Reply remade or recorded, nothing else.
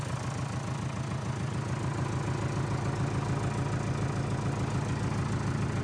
recorded